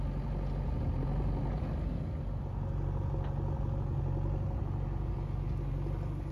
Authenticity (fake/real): real